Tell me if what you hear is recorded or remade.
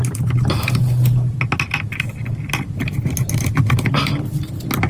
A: recorded